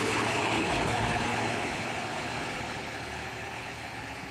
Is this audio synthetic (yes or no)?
yes